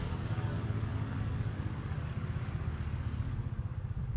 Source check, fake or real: fake